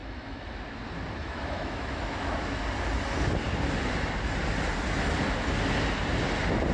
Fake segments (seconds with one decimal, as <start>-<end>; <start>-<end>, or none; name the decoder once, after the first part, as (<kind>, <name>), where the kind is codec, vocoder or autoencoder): 0.0-0.6 (autoencoder, DAC-VAE); 1.2-2.6